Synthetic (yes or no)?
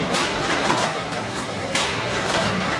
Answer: yes